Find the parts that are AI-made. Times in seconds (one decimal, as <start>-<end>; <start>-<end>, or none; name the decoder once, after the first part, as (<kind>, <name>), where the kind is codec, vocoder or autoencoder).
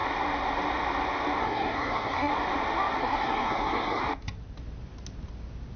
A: 1.4-2.3 (codec, SNAC); 3.0-4.0